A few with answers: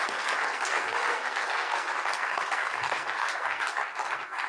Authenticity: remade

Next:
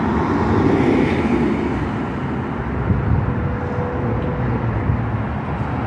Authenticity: recorded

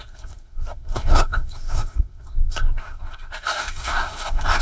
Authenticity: remade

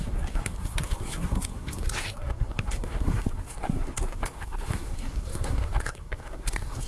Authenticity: remade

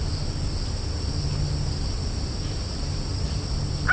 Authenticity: recorded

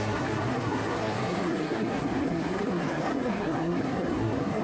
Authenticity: remade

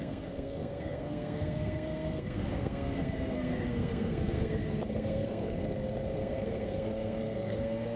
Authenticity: remade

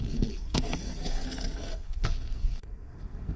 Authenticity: remade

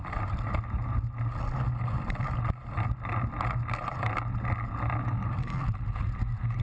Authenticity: recorded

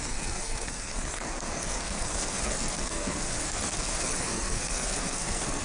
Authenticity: remade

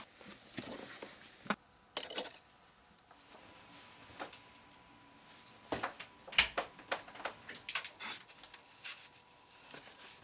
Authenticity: recorded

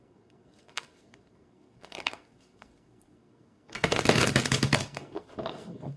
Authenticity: remade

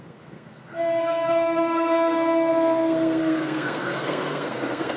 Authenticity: remade